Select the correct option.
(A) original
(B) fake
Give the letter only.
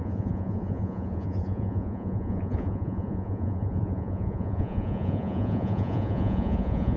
B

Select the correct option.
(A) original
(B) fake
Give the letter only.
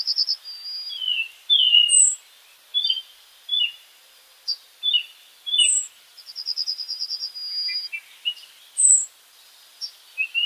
A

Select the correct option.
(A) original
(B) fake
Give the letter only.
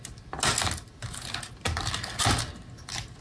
A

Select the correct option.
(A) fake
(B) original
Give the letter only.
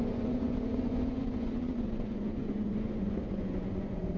A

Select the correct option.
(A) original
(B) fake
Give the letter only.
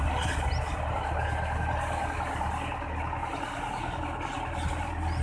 A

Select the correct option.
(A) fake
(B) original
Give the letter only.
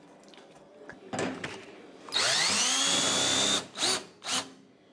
B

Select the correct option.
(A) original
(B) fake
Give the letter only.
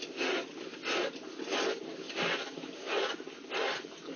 A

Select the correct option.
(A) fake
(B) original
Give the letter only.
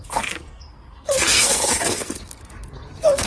A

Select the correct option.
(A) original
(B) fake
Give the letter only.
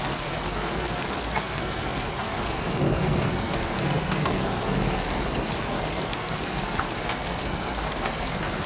B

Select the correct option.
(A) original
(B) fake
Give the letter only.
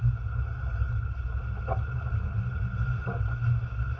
A